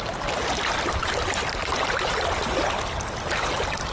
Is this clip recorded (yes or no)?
yes